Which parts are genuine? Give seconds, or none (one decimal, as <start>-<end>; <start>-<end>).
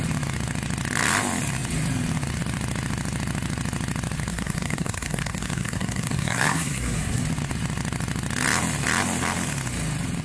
0.0-4.3; 7.2-10.2